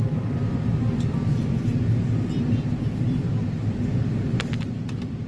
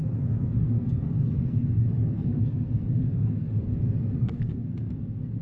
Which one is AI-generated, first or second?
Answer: second